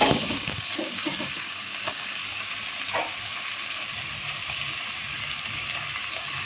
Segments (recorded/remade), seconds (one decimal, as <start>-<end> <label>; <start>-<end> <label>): 0.0-2.2 remade; 2.2-6.1 recorded; 6.1-6.5 remade